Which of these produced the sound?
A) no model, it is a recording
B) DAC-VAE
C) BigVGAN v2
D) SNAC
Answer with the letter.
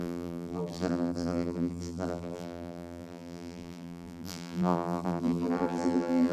C